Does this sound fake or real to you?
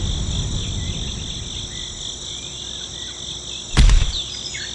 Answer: real